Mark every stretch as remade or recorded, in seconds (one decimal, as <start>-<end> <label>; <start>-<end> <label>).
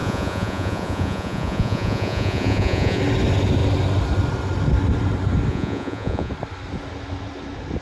0.0-3.0 remade; 3.0-5.5 recorded; 5.5-6.3 remade; 6.3-7.8 recorded